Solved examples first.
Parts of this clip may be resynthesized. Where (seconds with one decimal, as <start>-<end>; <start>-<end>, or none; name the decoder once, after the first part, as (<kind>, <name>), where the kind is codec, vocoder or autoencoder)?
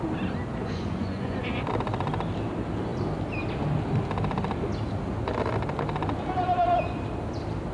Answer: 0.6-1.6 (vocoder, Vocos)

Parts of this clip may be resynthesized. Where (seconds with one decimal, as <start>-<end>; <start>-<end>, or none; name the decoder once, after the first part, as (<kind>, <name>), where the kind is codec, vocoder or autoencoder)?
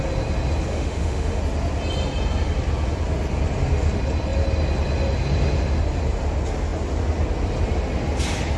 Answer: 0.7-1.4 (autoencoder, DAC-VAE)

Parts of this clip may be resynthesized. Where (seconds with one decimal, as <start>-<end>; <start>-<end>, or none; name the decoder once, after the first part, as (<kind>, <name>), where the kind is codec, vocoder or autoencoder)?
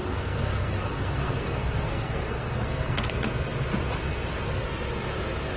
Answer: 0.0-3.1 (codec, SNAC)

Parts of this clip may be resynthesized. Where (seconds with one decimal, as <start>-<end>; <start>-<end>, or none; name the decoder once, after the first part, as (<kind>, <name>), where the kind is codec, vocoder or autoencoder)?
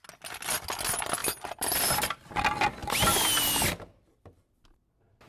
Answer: 1.2-1.9 (vocoder, BigVGAN v2)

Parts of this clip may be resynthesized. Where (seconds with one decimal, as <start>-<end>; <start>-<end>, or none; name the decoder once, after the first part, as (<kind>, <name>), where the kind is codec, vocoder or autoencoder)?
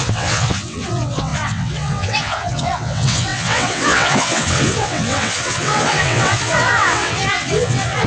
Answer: 0.0-8.1 (vocoder, WaveNeXt)